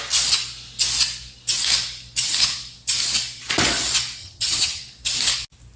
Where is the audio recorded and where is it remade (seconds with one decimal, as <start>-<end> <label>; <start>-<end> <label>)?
0.0-4.2 recorded; 4.2-4.8 remade; 4.8-5.8 recorded